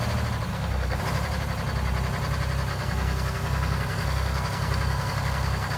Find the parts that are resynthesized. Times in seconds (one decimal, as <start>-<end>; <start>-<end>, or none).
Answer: 0.5-1.0; 2.7-5.8